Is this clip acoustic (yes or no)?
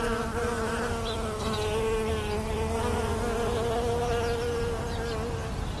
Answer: yes